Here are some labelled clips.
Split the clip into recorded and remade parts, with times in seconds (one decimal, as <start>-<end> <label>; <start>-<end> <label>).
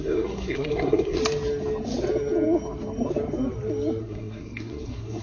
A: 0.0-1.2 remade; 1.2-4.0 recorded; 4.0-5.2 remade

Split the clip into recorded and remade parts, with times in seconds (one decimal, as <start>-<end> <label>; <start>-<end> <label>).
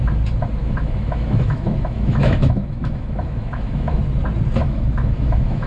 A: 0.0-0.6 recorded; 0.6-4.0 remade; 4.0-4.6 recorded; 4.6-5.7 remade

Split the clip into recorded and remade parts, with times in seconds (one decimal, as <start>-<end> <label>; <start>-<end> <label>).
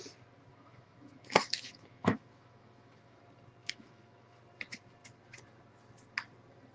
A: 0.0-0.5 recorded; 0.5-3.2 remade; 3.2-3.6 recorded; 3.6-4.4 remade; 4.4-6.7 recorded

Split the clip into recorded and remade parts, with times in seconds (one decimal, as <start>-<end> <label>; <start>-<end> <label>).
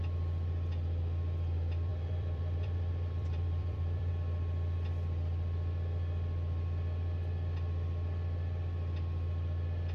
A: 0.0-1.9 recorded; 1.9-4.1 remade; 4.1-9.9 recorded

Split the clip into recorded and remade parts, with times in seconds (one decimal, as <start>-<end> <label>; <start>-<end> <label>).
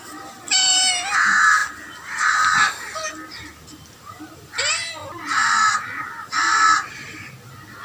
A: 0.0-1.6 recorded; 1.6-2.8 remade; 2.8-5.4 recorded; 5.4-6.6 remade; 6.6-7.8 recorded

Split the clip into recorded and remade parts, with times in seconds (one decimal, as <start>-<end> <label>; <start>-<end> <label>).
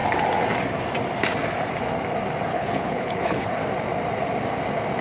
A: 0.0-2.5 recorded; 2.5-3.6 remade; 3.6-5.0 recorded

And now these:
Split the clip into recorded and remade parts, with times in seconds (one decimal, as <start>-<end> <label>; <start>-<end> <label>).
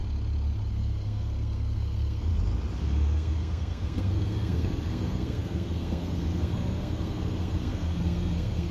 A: 0.0-0.7 recorded; 0.7-2.3 remade; 2.3-2.8 recorded; 2.8-8.7 remade